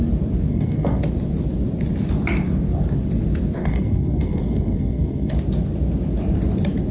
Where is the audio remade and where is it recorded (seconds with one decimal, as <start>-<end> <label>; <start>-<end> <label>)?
0.0-0.5 recorded; 0.5-1.0 remade; 1.0-3.6 recorded; 3.6-5.3 remade; 5.3-6.9 recorded